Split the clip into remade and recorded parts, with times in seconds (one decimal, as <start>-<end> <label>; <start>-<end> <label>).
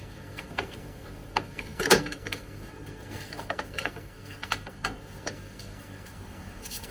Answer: 0.0-6.9 remade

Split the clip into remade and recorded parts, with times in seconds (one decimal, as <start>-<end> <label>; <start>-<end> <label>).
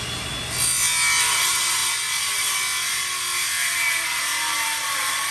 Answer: 0.0-5.3 recorded